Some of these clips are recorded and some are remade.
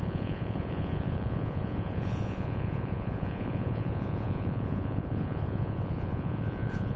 remade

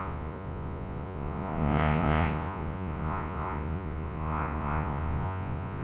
remade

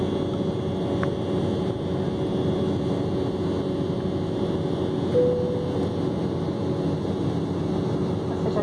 recorded